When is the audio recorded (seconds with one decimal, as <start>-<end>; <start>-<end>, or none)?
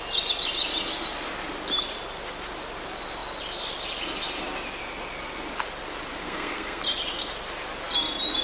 0.0-6.2; 6.8-8.4